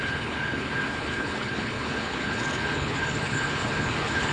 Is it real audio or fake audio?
fake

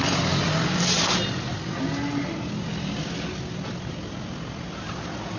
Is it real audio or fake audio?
real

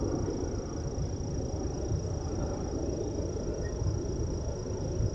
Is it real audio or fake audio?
real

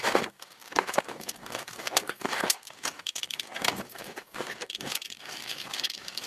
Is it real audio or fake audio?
fake